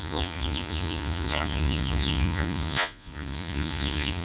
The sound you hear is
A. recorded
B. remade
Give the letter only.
B